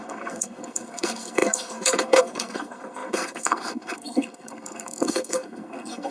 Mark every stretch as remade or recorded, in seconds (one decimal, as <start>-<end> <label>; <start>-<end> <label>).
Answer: 0.0-6.1 remade